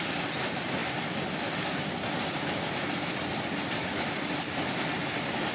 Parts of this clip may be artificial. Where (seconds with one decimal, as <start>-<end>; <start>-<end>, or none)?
none